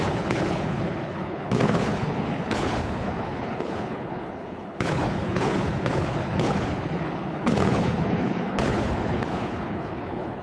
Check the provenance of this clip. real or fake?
fake